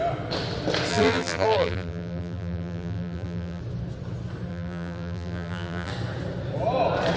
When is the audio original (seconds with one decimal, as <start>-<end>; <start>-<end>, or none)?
0.0-0.9; 3.6-4.5; 5.9-7.2